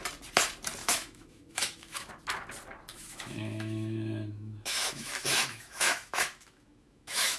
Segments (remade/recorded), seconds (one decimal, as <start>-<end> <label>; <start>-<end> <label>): 0.0-0.8 recorded; 0.8-2.1 remade; 2.1-2.9 recorded; 2.9-7.4 remade